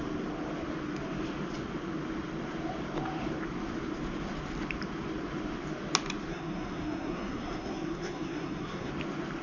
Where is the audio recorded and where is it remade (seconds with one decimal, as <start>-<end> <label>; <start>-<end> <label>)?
0.0-6.3 recorded; 6.3-8.9 remade; 8.9-9.4 recorded